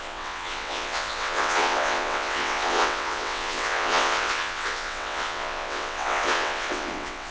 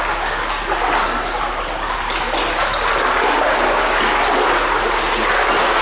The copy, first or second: first